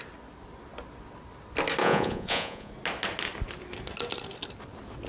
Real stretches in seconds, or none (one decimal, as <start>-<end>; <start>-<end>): 0.0-1.8; 2.7-5.1